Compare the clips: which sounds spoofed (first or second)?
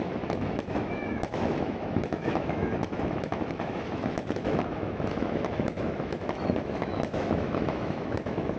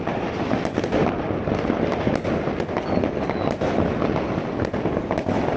first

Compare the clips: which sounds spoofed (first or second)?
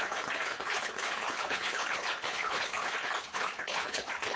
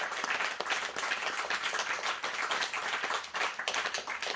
first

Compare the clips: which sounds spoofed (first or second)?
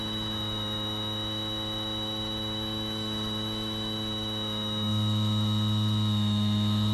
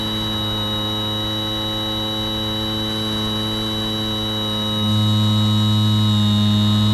first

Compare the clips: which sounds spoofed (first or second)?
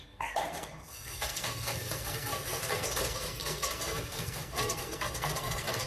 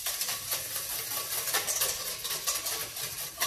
first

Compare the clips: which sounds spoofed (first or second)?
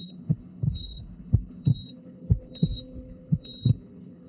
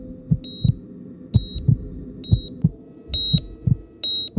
first